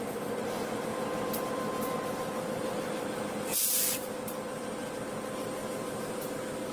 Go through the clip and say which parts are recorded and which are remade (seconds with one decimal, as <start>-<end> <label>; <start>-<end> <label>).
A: 0.0-5.6 recorded; 5.6-6.3 remade; 6.3-6.7 recorded